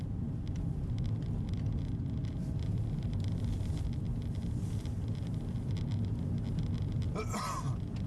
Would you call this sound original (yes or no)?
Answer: yes